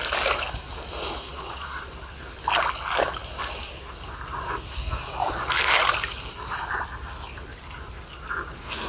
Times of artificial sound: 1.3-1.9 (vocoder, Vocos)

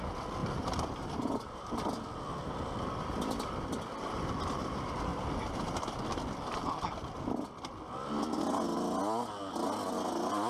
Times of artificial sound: 0.4-1.7 (vocoder, BigVGAN v2)

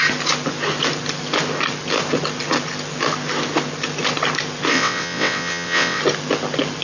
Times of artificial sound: 4.7-6.0 (vocoder, WaveNeXt)

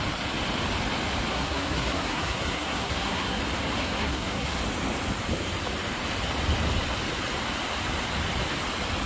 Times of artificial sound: 1.3-3.4 (codec, SNAC); 3.8-4.6